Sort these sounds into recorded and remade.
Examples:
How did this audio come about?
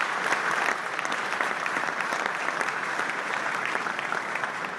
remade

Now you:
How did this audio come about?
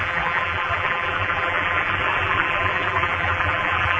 remade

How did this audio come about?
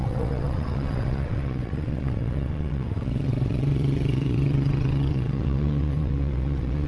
remade